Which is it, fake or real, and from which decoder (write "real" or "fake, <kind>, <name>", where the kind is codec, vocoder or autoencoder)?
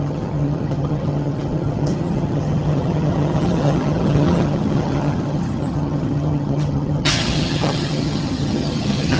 fake, vocoder, HiFi-GAN